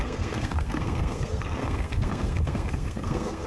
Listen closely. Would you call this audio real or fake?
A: fake